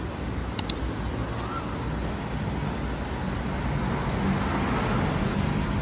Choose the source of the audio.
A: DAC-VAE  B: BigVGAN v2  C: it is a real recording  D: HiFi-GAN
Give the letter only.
C